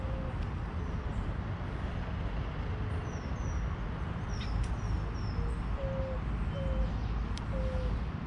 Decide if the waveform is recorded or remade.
recorded